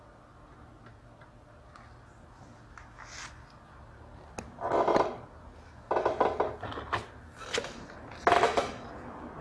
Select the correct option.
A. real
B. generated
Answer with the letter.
A